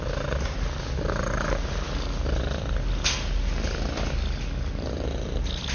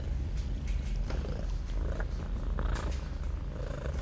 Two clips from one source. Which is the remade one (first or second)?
second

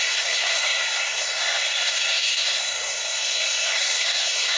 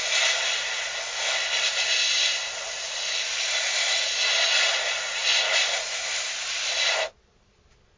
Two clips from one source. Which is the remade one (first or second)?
first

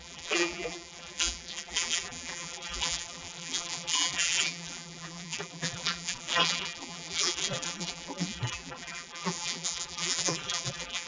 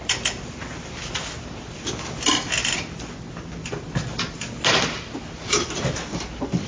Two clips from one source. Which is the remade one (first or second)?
first